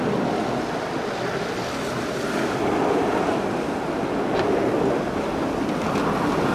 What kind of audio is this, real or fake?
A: real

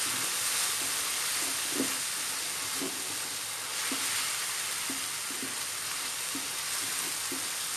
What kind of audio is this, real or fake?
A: real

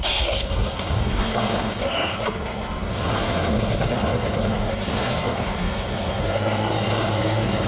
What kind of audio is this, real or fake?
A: fake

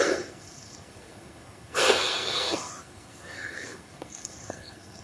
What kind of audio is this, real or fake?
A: fake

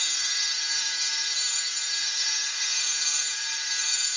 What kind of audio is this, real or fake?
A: fake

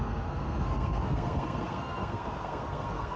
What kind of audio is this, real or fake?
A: fake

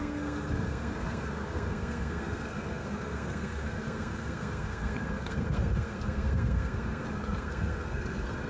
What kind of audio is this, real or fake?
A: fake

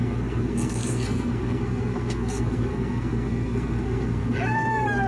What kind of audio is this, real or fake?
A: fake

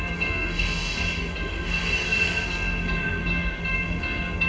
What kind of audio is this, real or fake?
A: fake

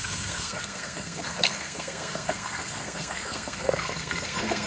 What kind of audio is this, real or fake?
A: fake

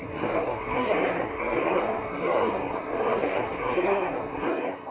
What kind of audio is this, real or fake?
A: fake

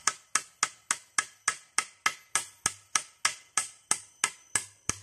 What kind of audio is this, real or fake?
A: real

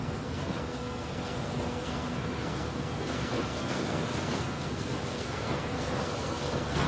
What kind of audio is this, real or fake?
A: fake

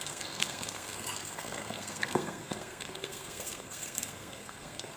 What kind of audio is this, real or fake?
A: fake